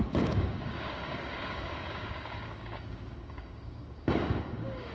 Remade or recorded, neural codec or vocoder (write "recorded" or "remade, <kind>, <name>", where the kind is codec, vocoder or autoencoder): remade, codec, DAC